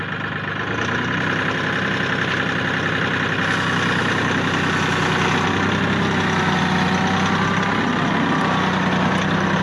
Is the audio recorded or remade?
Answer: recorded